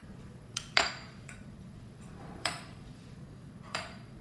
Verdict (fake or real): fake